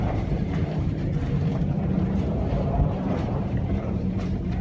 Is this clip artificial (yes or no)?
yes